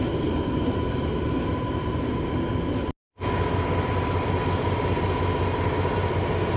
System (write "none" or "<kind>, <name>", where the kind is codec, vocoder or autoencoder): none